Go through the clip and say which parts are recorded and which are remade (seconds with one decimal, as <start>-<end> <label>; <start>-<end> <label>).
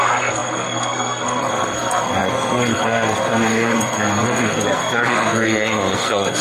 0.0-6.4 remade